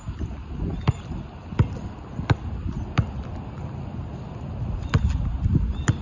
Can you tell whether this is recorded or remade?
recorded